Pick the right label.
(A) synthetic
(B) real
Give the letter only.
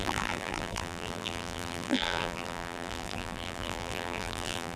A